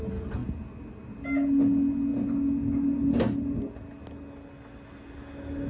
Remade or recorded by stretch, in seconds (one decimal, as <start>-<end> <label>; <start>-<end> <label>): 0.0-5.7 recorded